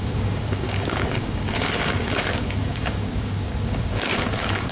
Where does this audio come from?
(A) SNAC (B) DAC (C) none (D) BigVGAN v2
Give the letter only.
B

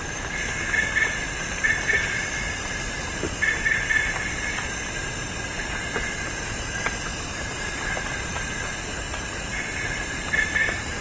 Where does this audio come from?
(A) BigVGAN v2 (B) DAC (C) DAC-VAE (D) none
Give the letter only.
D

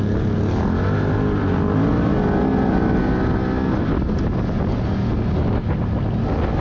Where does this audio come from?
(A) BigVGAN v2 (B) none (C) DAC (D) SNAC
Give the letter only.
B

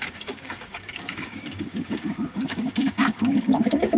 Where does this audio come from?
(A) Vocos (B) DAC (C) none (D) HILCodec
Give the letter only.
B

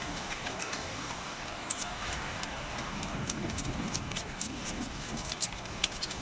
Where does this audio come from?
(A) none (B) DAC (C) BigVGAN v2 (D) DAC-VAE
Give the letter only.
B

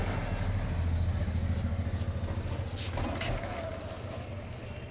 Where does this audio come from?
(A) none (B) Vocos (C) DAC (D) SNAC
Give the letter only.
A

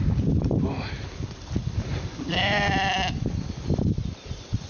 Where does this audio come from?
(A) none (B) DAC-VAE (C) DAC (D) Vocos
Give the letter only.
A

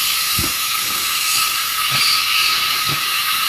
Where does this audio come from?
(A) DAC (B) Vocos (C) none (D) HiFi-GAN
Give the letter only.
A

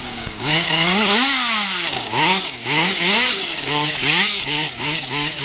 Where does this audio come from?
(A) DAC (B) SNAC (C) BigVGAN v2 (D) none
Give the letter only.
A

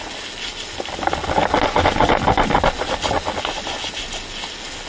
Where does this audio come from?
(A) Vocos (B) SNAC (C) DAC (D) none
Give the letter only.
D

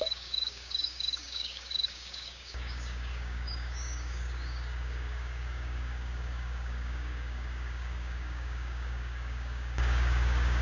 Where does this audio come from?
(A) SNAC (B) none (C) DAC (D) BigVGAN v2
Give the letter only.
C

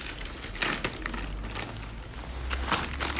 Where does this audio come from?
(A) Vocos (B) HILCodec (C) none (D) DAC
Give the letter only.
C